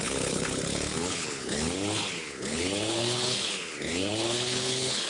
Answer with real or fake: fake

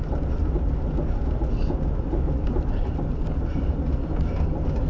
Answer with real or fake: real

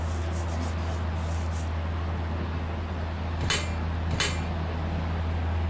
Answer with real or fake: real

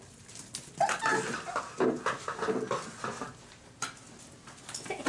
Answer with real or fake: real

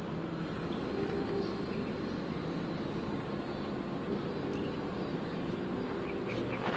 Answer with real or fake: real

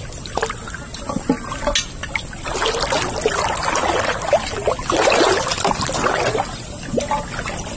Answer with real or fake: real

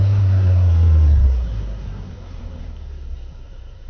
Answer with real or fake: fake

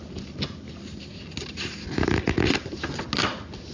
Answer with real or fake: real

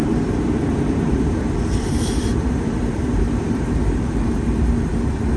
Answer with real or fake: fake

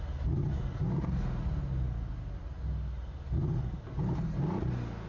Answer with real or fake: real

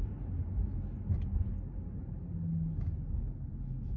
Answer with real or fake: real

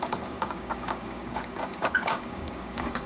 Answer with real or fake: fake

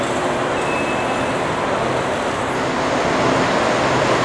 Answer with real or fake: real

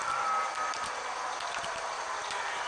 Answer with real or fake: real